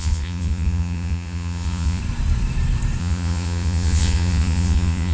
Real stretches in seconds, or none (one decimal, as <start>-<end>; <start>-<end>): 2.0-3.0